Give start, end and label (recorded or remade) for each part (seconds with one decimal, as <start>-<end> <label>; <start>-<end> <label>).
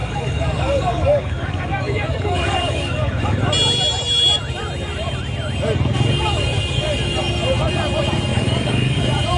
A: 0.0-3.5 remade; 3.5-8.3 recorded; 8.3-9.0 remade; 9.0-9.4 recorded